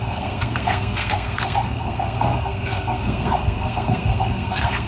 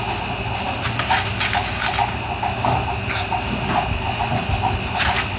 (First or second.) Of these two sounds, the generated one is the first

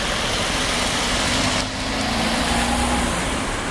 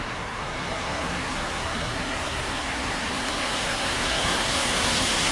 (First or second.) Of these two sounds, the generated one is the second